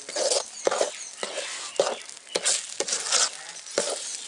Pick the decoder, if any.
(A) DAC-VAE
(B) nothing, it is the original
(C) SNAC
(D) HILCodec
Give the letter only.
B